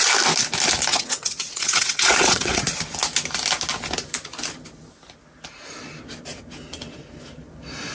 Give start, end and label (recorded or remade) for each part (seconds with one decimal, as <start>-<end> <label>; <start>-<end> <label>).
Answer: 0.0-0.9 recorded; 0.9-2.6 remade; 2.6-7.9 recorded